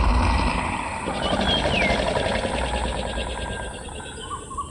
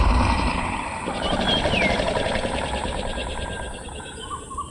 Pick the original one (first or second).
first